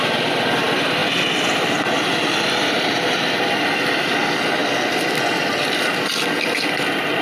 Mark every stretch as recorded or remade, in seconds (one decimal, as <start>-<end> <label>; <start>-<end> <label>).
0.0-7.2 recorded